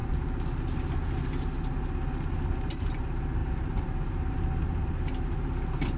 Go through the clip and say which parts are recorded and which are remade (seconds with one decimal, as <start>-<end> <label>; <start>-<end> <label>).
0.0-3.4 recorded; 3.4-6.0 remade